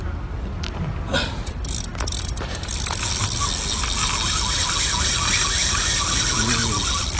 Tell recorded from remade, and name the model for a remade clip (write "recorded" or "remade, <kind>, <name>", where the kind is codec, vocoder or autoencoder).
recorded